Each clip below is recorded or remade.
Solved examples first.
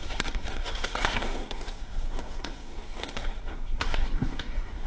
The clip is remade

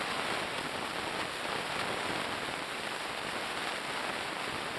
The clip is recorded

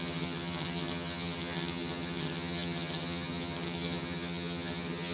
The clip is remade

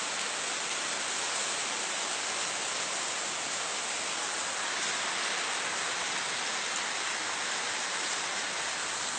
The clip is recorded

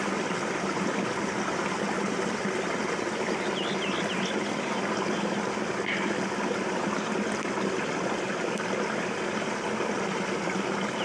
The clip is recorded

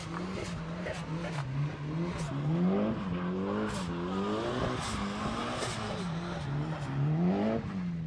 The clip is recorded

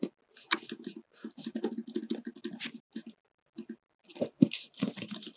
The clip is recorded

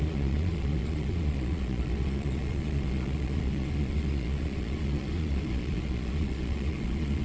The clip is remade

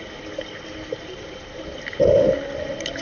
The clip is recorded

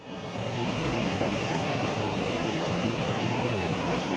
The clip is remade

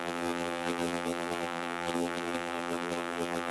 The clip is remade